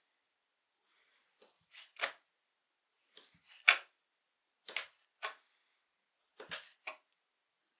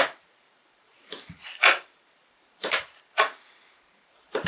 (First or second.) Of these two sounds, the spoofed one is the second